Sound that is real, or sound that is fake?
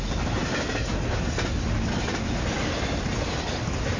real